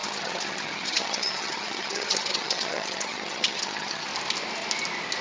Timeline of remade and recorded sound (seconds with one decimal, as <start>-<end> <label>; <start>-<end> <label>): 0.0-4.1 remade; 4.1-5.2 recorded